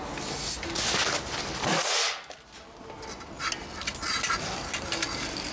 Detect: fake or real real